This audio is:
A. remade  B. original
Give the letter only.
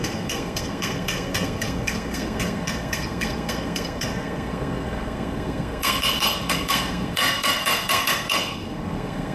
A